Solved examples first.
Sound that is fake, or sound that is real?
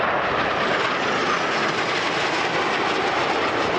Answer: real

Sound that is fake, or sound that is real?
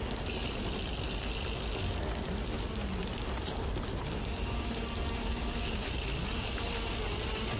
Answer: real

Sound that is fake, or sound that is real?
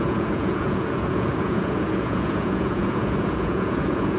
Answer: fake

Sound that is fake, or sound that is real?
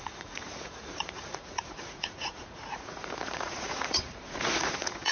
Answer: fake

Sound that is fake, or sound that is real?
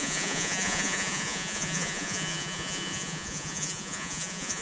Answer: fake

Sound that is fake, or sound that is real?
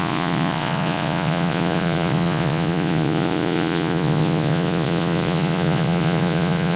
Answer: fake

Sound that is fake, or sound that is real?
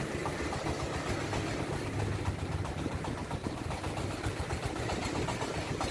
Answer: real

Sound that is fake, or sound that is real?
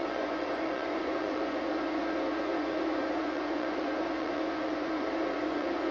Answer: fake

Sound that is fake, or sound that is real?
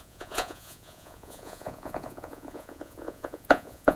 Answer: fake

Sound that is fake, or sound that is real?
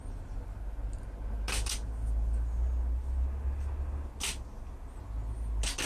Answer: real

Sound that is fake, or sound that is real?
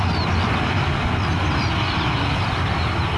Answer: real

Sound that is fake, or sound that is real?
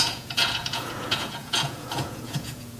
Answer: fake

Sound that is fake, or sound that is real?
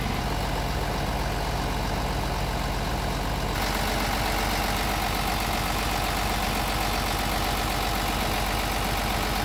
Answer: real